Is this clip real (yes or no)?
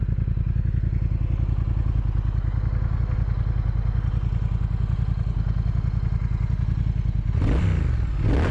yes